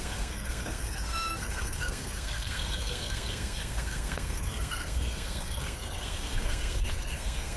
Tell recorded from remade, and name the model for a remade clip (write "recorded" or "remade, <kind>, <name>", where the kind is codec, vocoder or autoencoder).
remade, codec, SNAC